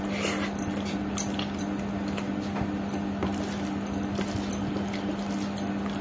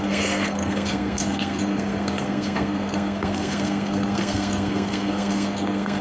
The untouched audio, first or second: first